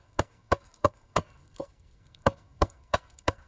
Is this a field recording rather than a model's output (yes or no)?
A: no